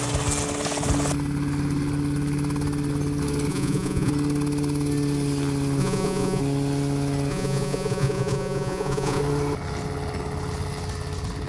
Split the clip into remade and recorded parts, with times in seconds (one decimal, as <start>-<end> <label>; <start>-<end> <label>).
0.0-3.5 recorded; 3.5-4.1 remade; 4.1-5.8 recorded; 5.8-6.4 remade; 6.4-7.3 recorded; 7.3-9.2 remade; 9.2-11.5 recorded